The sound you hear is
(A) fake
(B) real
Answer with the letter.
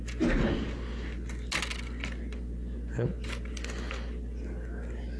B